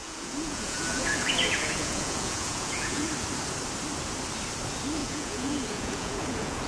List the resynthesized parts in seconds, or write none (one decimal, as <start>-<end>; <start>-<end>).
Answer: 0.0-3.1; 5.0-6.7